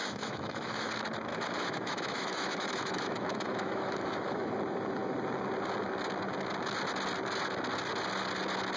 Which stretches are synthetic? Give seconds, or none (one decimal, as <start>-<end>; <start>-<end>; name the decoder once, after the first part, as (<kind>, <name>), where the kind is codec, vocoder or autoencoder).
0.0-0.9 (autoencoder, DAC-VAE); 1.3-4.5